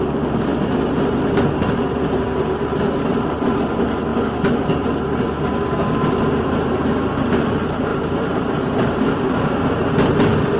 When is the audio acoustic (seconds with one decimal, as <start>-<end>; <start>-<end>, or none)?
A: 0.0-10.6